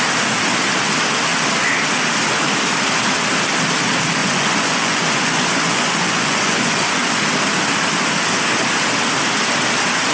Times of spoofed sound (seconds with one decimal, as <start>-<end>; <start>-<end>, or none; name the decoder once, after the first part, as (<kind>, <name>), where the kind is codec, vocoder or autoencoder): 4.2-7.2 (vocoder, Vocos)